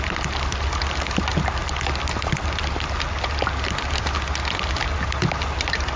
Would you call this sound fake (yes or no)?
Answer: no